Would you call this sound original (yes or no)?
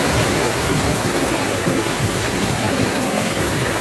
no